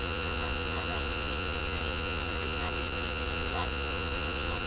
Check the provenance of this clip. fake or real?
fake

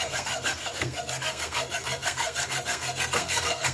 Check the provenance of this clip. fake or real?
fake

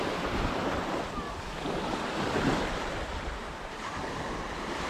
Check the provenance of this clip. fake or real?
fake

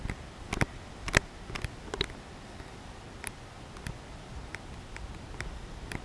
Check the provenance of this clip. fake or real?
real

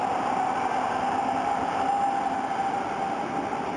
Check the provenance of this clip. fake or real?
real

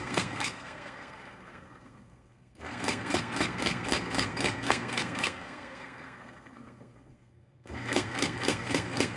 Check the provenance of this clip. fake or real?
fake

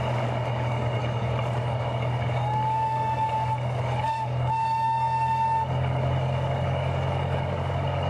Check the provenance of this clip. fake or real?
fake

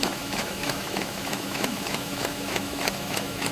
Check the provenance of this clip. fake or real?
fake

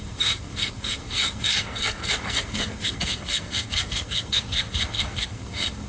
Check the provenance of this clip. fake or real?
fake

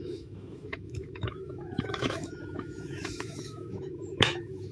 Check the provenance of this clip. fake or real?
fake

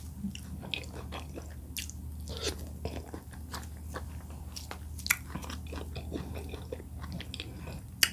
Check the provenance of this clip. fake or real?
real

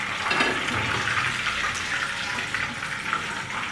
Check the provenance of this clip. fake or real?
real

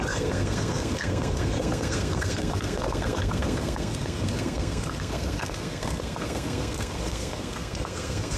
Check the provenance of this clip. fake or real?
fake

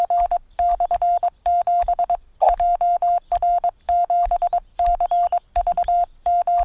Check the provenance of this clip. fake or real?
real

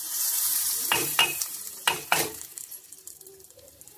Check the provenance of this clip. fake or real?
fake